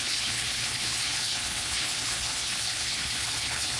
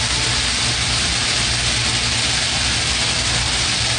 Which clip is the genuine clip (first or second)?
second